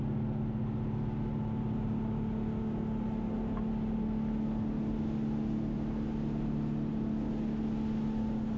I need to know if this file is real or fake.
real